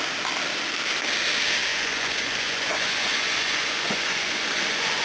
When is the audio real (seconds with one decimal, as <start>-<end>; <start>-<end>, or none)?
0.0-1.7